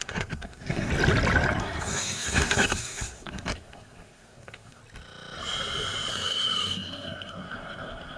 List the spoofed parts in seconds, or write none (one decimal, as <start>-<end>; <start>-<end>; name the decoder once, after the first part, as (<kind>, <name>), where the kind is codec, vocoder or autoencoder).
0.0-0.9 (codec, SNAC); 1.6-4.8; 6.1-8.2